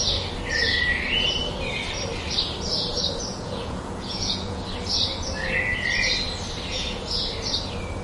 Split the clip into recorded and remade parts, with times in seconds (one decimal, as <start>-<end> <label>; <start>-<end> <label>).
0.0-3.3 recorded; 3.3-4.6 remade; 4.6-6.7 recorded; 6.7-7.2 remade; 7.2-8.0 recorded